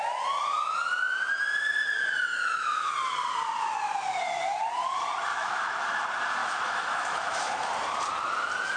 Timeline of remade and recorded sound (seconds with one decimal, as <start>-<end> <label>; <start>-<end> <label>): 0.0-2.3 recorded; 2.3-2.9 remade; 2.9-5.3 recorded; 5.3-5.8 remade; 5.8-6.4 recorded; 6.4-7.7 remade; 7.7-8.8 recorded

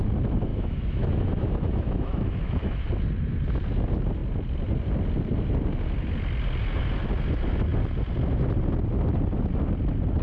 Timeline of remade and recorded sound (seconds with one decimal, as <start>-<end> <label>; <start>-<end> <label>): 0.0-0.5 recorded; 0.5-2.9 remade; 2.9-10.2 recorded

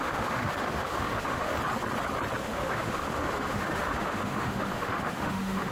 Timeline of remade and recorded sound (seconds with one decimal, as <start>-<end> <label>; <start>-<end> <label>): 0.0-1.5 remade; 1.5-2.4 recorded; 2.4-5.7 remade

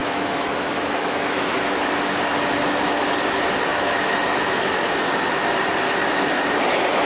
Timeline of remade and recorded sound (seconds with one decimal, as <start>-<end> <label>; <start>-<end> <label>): 0.0-1.6 remade; 1.6-3.7 recorded; 3.7-4.9 remade; 4.9-7.0 recorded

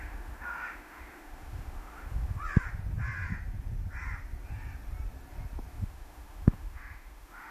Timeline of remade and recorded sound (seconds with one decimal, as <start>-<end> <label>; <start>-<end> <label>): 0.0-2.4 remade; 2.4-5.7 recorded; 5.7-7.5 remade